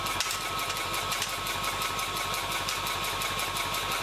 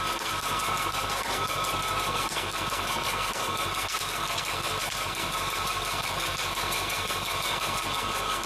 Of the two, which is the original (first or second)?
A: first